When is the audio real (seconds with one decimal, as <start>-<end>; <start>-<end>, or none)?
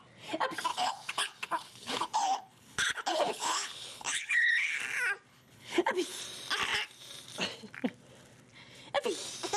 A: 0.0-0.7; 4.8-5.3; 6.2-9.6